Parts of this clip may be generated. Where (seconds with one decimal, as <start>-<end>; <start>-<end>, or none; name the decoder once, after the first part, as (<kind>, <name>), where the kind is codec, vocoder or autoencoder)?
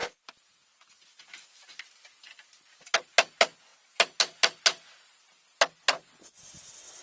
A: none